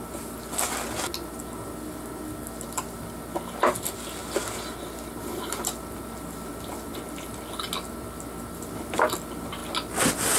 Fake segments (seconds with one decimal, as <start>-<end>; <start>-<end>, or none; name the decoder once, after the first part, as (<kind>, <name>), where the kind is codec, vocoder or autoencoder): none